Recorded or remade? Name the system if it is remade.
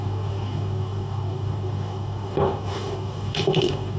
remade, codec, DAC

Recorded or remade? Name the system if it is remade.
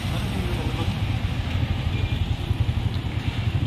recorded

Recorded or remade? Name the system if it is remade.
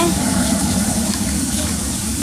remade, codec, DAC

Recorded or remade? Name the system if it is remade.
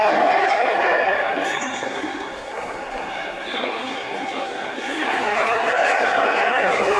remade, codec, SNAC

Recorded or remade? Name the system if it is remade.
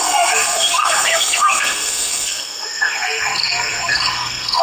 remade, codec, SNAC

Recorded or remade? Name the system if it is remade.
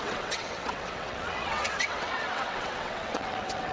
remade, vocoder, WaveNeXt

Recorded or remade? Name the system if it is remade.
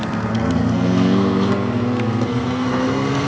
remade, codec, SNAC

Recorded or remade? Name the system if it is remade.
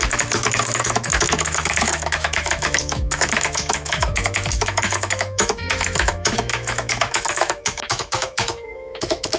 remade, autoencoder, DAC-VAE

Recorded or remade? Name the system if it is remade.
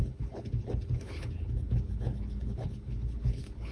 remade, codec, HILCodec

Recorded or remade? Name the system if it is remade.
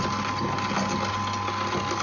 recorded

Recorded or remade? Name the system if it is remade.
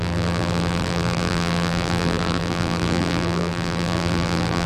remade, vocoder, BigVGAN v2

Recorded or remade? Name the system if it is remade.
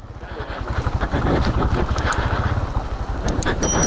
recorded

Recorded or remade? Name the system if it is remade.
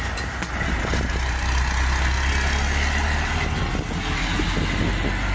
recorded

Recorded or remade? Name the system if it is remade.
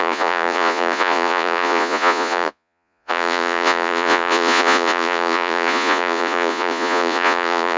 remade, vocoder, Vocos